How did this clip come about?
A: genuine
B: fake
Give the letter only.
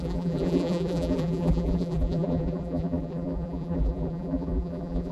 B